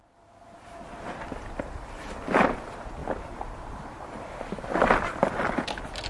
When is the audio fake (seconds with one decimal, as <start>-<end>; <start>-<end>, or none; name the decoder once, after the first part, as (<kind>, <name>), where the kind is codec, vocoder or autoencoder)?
3.0-4.6 (vocoder, BigVGAN v2)